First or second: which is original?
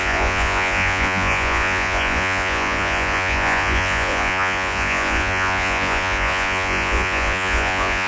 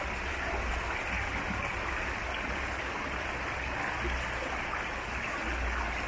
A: second